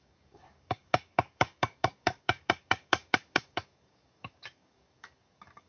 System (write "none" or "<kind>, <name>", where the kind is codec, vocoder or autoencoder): codec, DAC